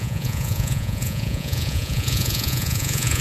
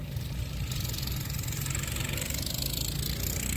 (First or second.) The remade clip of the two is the first